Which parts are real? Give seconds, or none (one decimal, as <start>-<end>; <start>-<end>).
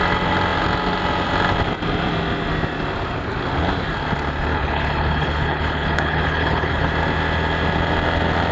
0.0-4.5; 6.9-8.5